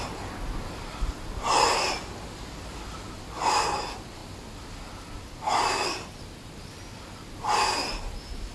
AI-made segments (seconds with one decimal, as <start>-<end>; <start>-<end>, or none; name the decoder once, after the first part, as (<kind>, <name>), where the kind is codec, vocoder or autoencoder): none